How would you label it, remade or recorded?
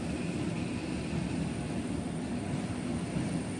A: recorded